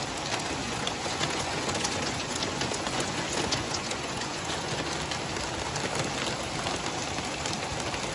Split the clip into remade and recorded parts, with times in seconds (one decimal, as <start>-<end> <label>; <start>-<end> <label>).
0.0-0.6 recorded; 0.6-4.9 remade; 4.9-8.1 recorded